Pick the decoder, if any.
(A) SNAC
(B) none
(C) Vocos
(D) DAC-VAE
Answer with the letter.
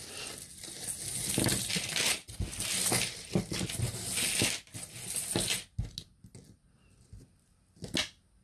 B